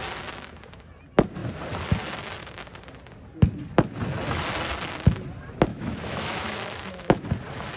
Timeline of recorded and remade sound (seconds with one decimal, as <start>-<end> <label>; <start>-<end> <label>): 0.0-5.7 recorded; 5.7-7.2 remade; 7.2-7.8 recorded